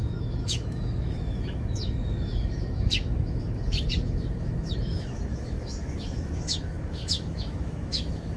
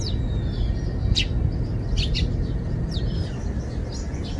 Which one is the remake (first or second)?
first